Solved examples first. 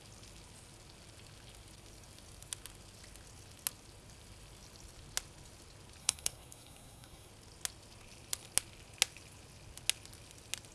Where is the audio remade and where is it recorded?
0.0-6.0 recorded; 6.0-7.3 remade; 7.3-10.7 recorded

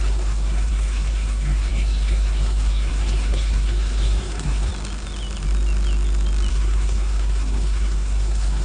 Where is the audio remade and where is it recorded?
0.0-4.7 remade; 4.7-6.5 recorded; 6.5-8.6 remade

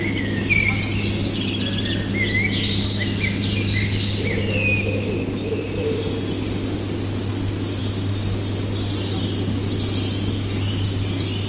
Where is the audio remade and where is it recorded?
0.0-11.5 recorded

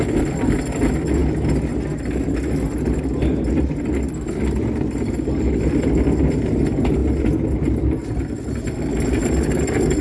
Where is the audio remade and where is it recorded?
0.0-10.0 recorded